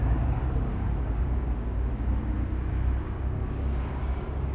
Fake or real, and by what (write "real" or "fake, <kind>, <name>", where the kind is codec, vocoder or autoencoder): fake, codec, DAC